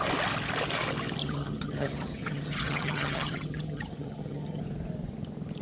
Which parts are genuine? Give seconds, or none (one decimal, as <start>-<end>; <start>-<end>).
0.0-1.2; 4.6-5.6